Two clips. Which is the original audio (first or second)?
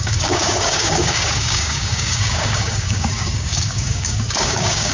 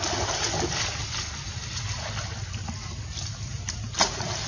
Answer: second